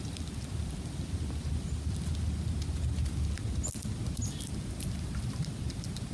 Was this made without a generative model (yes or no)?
yes